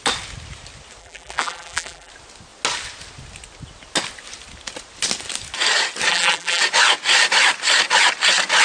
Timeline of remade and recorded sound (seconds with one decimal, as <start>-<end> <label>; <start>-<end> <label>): 0.0-1.0 recorded; 1.0-2.1 remade; 2.1-6.1 recorded; 6.1-6.6 remade; 6.6-8.6 recorded

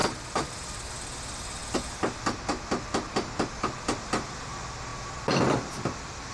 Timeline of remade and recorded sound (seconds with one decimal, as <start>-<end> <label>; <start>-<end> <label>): 0.0-6.3 recorded

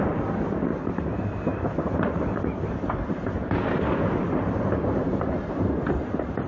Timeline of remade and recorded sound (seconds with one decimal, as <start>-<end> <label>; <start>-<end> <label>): 0.0-0.7 recorded; 0.7-4.6 remade; 4.6-6.5 recorded

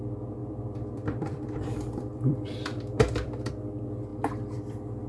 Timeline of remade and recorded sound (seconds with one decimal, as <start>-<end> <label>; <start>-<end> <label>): 0.0-0.4 recorded; 0.4-3.5 remade; 3.5-4.1 recorded; 4.1-5.1 remade

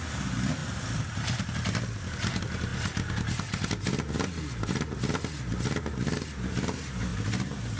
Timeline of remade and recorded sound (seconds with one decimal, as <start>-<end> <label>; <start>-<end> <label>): 0.0-7.8 recorded

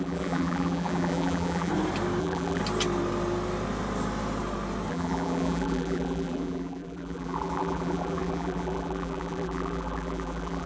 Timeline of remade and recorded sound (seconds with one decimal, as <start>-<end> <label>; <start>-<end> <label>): 0.0-1.7 remade; 1.7-2.2 recorded; 2.2-2.6 remade; 2.6-4.9 recorded; 4.9-10.7 remade